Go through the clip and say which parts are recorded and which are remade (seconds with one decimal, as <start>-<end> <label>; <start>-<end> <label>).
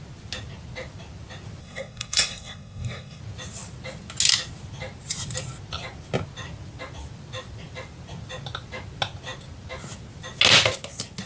0.0-1.6 recorded; 1.6-3.2 remade; 3.2-11.3 recorded